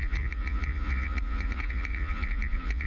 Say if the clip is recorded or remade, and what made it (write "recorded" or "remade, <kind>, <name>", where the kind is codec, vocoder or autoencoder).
remade, vocoder, Vocos